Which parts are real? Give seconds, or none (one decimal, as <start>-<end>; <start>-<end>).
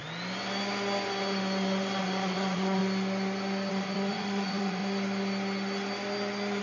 0.0-2.0; 2.8-3.7; 4.8-6.6